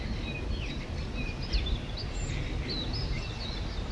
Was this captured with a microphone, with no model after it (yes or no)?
yes